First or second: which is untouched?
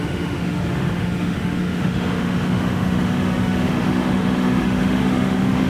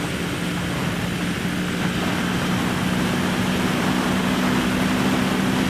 second